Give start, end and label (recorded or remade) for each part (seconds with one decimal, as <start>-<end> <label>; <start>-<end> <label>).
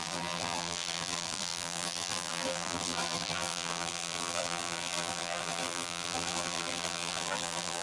0.0-7.8 remade